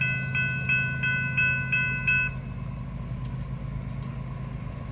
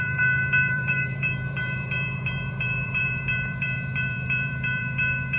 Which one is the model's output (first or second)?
second